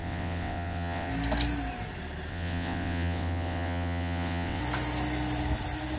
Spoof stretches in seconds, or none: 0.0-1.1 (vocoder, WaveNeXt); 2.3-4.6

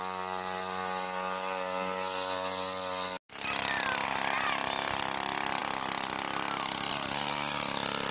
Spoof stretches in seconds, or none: none

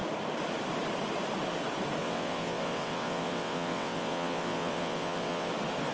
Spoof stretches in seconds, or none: 2.0-5.5 (vocoder, WaveNeXt)

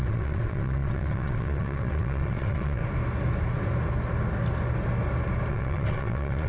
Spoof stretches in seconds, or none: 0.0-2.8 (vocoder, WaveNeXt); 5.5-6.5